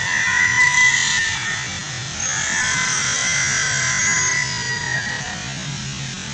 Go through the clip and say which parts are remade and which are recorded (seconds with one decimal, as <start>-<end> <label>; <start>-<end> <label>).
0.0-6.3 recorded